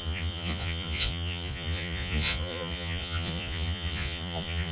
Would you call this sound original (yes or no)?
no